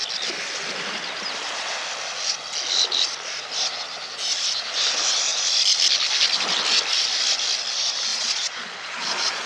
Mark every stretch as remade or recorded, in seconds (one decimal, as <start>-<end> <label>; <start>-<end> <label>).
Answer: 0.0-8.1 recorded; 8.1-9.5 remade